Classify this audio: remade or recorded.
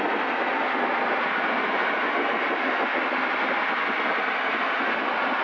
recorded